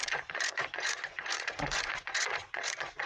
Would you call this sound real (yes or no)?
no